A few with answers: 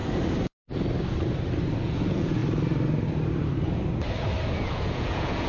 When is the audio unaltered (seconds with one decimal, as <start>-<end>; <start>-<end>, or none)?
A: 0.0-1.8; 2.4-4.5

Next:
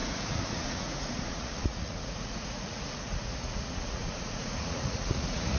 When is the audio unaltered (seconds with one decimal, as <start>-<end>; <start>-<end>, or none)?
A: none

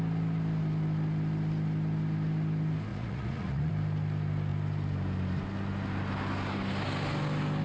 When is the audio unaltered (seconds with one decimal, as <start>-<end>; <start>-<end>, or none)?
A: 0.0-2.9; 3.7-7.6